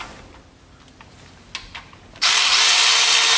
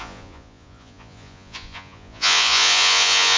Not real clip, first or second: second